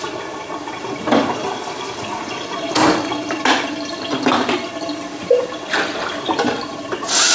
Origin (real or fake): real